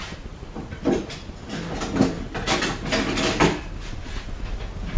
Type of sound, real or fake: real